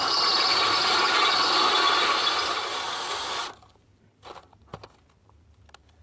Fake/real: real